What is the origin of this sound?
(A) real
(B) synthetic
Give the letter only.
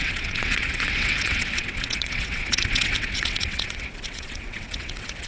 B